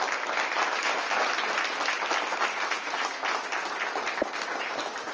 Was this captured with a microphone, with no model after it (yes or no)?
yes